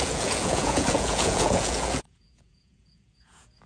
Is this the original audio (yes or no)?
no